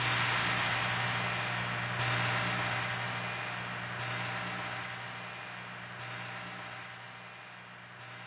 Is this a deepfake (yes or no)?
no